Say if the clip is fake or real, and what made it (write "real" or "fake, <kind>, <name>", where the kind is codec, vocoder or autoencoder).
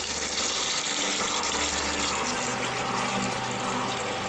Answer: real